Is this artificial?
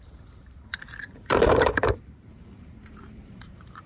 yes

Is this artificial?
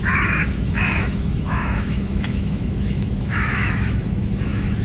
yes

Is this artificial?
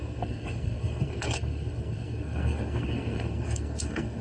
yes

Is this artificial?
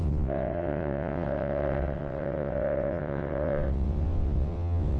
yes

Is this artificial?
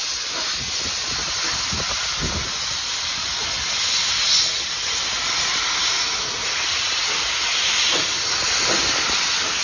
no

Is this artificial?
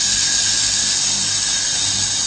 no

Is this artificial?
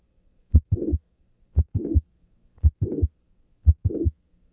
yes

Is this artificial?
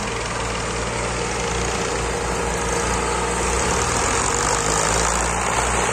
no